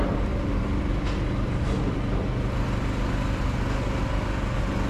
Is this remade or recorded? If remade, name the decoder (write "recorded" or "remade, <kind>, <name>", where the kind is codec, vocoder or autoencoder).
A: recorded